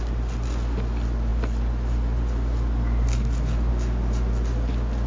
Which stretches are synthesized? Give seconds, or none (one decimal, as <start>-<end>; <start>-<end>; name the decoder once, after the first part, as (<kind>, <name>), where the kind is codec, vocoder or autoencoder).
none